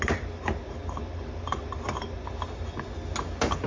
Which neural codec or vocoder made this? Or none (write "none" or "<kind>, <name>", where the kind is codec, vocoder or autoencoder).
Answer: none